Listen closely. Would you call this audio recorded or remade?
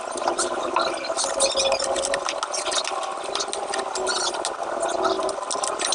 recorded